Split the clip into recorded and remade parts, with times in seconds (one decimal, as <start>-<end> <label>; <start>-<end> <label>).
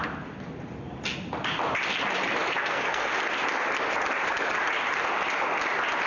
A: 0.0-2.6 recorded; 2.6-3.2 remade; 3.2-6.1 recorded